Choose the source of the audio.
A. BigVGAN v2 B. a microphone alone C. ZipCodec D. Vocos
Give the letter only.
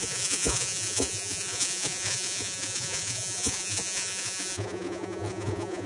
D